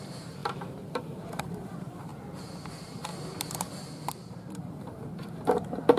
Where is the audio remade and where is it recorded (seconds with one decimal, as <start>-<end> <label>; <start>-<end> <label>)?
0.0-2.1 remade; 2.1-2.7 recorded; 2.7-3.1 remade; 3.1-4.5 recorded; 4.5-6.0 remade